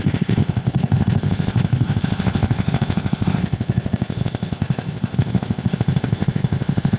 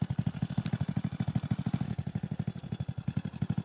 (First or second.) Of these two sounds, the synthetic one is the first